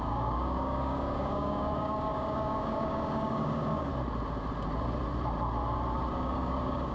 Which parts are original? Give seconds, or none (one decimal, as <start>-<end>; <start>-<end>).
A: 3.9-6.1